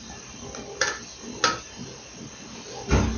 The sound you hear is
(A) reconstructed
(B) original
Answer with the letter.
B